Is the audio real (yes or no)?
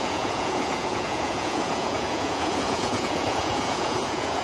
no